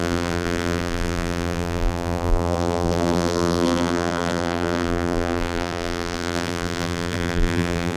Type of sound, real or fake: fake